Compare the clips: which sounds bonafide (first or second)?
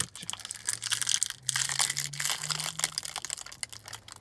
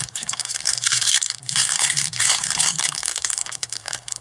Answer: first